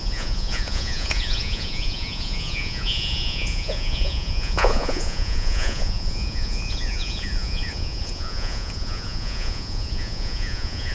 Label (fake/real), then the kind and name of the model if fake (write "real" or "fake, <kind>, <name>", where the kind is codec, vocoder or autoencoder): fake, vocoder, Vocos